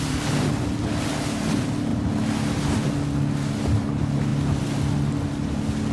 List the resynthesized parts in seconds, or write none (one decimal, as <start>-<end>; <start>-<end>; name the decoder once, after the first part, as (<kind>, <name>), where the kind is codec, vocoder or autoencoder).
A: none